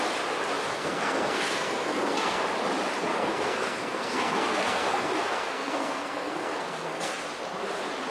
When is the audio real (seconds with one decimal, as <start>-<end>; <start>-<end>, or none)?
0.0-0.7; 2.4-3.1; 7.2-8.1